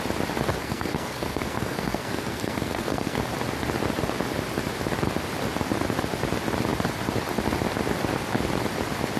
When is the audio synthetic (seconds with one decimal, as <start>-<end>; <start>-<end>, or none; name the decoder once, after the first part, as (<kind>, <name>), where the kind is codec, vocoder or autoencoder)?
0.5-3.2 (codec, SNAC)